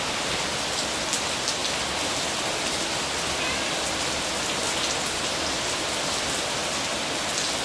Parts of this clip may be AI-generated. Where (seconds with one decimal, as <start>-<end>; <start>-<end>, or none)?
none